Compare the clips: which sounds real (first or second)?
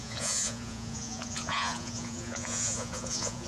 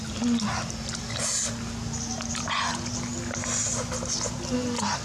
second